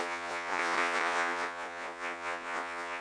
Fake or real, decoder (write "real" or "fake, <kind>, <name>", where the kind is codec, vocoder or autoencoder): fake, vocoder, Vocos